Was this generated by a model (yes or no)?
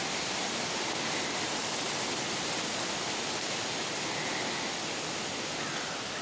no